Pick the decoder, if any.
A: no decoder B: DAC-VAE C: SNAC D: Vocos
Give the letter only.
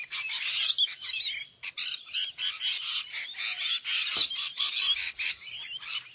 A